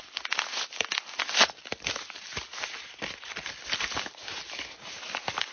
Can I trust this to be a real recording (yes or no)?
yes